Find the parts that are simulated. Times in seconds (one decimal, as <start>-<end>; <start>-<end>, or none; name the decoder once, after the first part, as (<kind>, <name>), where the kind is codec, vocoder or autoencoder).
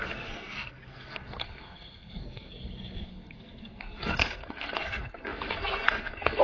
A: 0.0-6.4 (codec, SNAC)